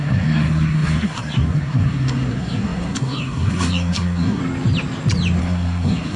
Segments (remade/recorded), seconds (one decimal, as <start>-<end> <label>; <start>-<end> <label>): 0.0-4.4 remade; 4.4-5.4 recorded; 5.4-6.2 remade